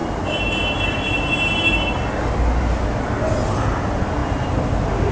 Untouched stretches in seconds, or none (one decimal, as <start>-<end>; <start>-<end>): 0.0-5.1